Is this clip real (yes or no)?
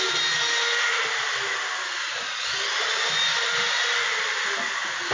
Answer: yes